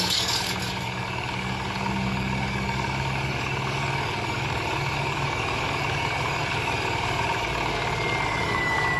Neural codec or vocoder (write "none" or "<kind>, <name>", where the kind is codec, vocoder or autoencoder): codec, DAC